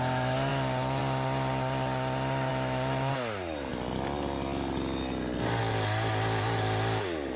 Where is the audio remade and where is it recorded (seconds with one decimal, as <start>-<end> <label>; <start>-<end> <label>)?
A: 0.0-2.5 recorded; 2.5-3.1 remade; 3.1-7.4 recorded